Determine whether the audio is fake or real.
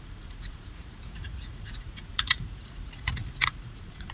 fake